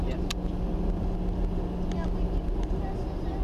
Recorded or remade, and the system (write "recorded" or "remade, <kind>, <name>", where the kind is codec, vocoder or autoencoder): recorded